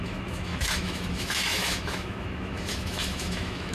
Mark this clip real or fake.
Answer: fake